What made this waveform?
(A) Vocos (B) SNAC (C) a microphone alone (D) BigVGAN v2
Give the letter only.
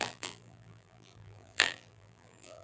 D